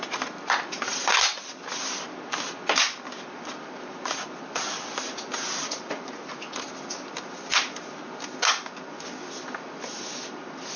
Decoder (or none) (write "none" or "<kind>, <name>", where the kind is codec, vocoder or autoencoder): none